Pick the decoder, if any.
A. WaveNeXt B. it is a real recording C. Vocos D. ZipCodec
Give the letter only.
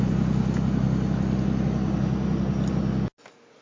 B